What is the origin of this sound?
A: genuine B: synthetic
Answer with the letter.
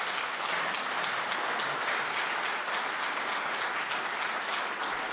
A